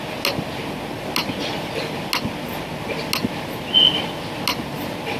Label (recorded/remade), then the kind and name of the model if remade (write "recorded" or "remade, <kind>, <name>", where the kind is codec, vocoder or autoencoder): recorded